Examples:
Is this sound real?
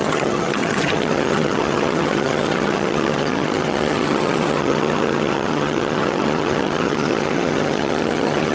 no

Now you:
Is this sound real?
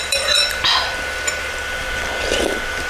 no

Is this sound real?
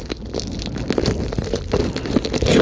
yes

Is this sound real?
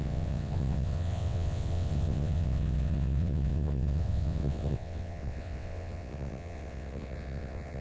no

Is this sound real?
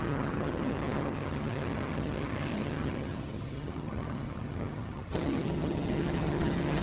no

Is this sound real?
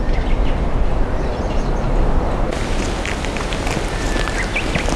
yes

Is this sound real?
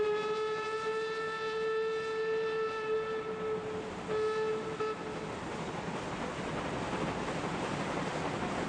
yes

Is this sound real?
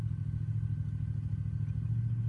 yes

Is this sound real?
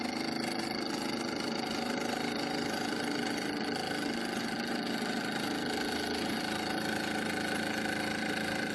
yes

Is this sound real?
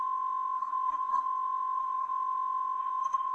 no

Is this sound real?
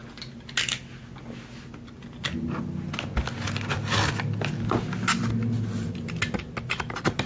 yes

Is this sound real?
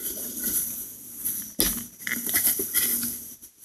yes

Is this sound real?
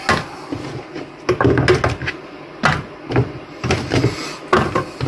yes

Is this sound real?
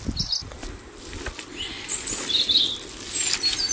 yes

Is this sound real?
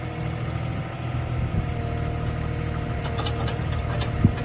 yes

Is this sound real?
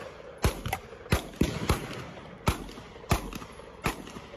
no